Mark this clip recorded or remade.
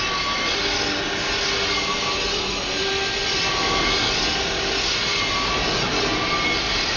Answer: recorded